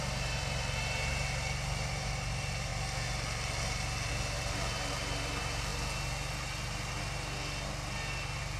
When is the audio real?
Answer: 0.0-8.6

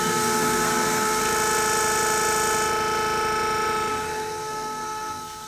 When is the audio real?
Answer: 1.2-3.9

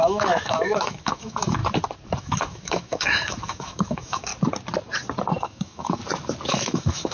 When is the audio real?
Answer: 1.6-2.2; 4.3-5.4; 6.0-6.5

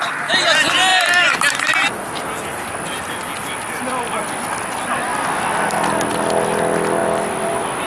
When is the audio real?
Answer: 0.0-7.0

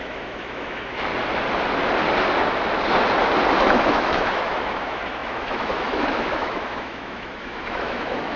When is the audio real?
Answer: 1.1-3.6